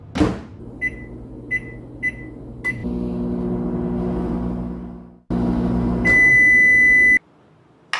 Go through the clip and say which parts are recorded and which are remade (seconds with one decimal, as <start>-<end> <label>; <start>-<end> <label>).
0.0-8.0 recorded